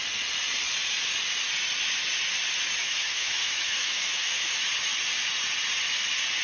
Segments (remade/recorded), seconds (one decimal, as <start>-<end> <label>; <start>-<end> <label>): 0.0-2.8 recorded; 2.8-4.5 remade; 4.5-6.4 recorded